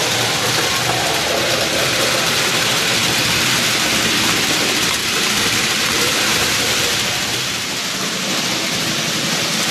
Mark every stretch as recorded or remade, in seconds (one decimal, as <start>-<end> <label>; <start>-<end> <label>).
0.0-5.0 recorded; 5.0-8.4 remade; 8.4-9.7 recorded